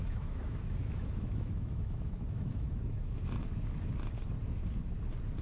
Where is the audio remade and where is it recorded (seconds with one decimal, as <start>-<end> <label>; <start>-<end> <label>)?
0.0-3.2 remade; 3.2-5.4 recorded